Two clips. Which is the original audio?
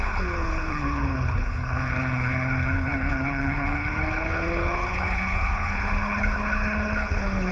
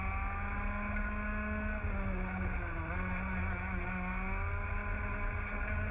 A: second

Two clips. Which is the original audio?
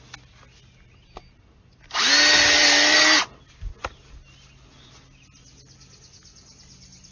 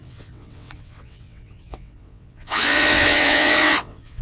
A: first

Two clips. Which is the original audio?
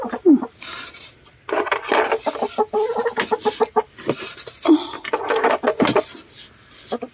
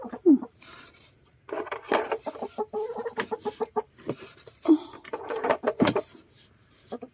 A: first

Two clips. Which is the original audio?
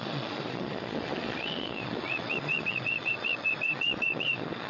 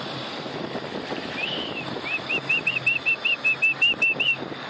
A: second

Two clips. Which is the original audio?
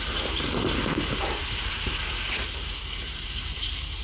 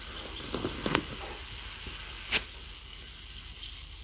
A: second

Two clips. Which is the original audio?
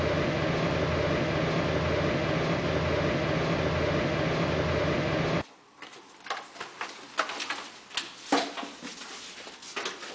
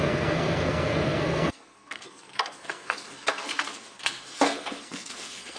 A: first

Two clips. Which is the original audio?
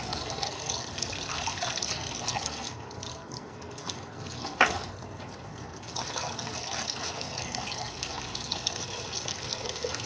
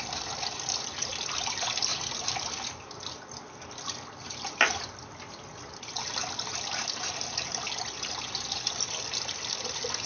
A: second